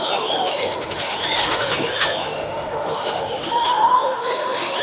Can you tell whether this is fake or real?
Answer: fake